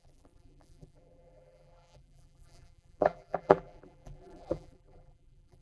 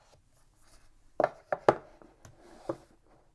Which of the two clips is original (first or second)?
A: second